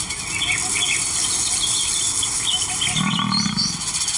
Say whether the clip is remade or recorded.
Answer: recorded